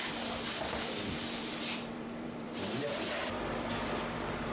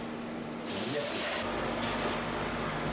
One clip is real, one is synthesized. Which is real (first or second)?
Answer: second